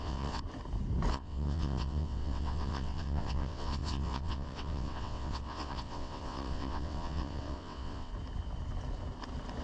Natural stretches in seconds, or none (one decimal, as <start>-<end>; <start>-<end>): 0.4-1.1; 8.1-9.6